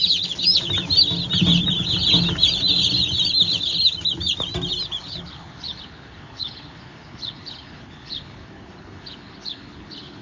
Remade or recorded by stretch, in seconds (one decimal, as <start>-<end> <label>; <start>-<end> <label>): 0.0-5.0 recorded; 5.0-10.2 remade